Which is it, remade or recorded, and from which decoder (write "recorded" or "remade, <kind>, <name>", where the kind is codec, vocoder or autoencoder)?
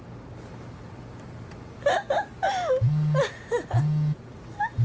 recorded